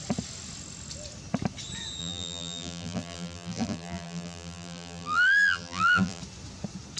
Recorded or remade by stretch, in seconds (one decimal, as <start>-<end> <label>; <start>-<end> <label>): 0.0-2.0 recorded; 2.0-6.2 remade; 6.2-7.0 recorded